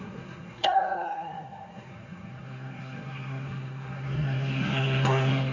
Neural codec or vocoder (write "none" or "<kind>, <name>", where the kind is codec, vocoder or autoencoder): codec, SNAC